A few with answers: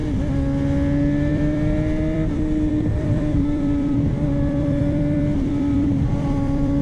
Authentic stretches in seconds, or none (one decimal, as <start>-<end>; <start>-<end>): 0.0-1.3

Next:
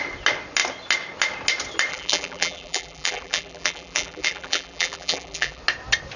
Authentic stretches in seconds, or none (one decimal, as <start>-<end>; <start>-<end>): 0.0-1.9; 5.6-6.2

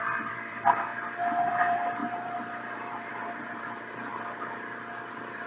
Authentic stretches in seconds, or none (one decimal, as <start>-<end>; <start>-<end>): 0.9-1.5; 4.1-5.1

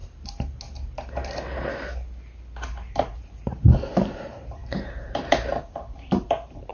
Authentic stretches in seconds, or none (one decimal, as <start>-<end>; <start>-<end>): 0.0-2.9

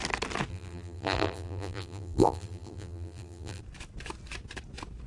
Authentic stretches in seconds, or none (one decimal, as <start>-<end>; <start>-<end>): 0.0-0.5; 3.6-5.1